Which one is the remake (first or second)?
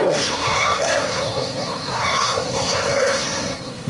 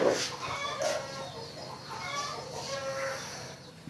first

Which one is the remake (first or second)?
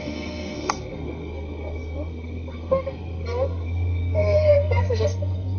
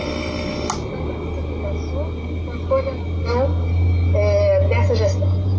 first